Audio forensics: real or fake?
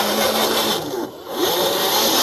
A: fake